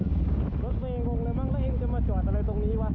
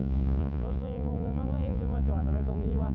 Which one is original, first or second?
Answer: first